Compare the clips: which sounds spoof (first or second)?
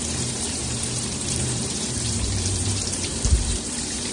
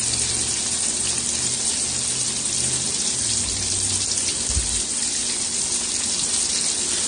first